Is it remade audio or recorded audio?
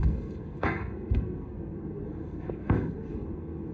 remade